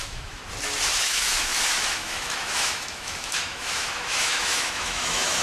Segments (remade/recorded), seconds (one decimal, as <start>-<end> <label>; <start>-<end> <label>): 0.0-0.4 remade; 0.4-1.0 recorded; 1.0-5.4 remade